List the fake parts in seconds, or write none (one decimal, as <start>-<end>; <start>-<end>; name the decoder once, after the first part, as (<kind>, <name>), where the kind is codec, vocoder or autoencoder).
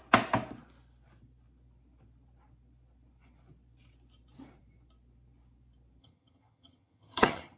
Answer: 6.0-7.6 (vocoder, HiFi-GAN)